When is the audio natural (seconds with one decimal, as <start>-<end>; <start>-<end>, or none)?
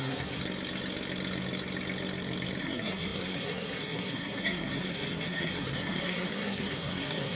0.4-2.6